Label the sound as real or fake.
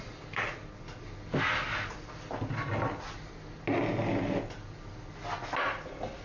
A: real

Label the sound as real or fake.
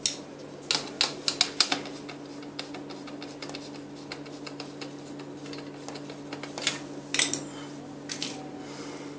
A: real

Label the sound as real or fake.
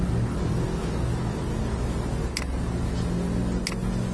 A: real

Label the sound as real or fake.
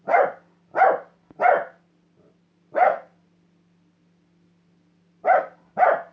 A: real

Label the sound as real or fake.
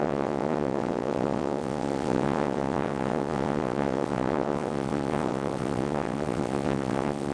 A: fake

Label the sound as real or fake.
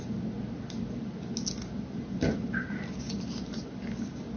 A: real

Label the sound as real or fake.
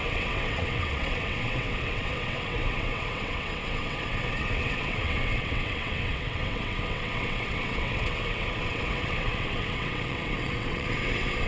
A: fake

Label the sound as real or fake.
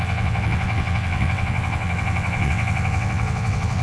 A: fake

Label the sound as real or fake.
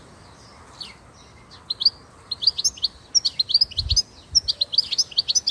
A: real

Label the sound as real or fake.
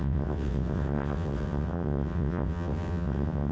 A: fake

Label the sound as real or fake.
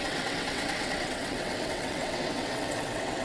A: fake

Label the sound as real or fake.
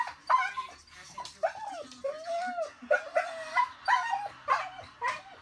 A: real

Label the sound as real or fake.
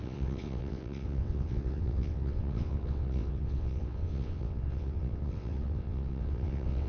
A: fake